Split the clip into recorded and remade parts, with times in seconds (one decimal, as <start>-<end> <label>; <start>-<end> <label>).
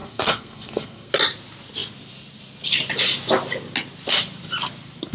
0.0-1.1 remade; 1.1-5.1 recorded